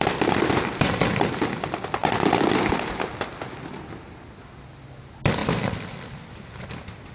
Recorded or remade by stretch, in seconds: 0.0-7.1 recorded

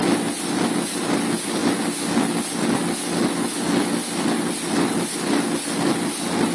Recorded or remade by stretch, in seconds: 0.0-6.5 recorded

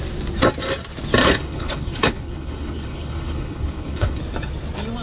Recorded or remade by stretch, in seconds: 0.0-1.2 recorded; 1.2-4.2 remade; 4.2-5.0 recorded

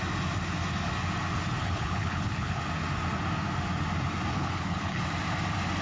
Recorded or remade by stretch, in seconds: 0.0-1.6 recorded; 1.6-2.6 remade; 2.6-4.3 recorded; 4.3-5.0 remade; 5.0-5.8 recorded

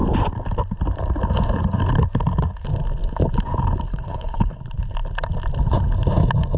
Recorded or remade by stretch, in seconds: 0.0-3.9 recorded; 3.9-4.6 remade; 4.6-6.6 recorded